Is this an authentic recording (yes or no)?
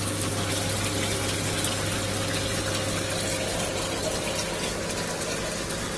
yes